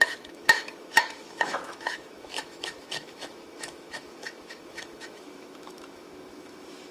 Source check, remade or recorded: remade